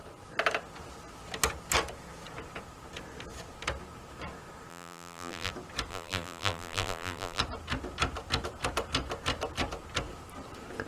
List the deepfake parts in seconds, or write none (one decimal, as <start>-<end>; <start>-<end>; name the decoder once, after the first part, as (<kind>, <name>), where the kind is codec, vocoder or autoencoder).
4.7-5.5 (vocoder, BigVGAN v2); 5.9-7.4